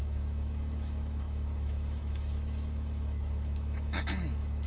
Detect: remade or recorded remade